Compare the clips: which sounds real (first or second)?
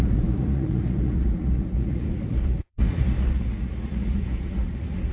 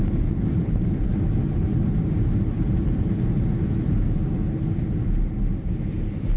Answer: second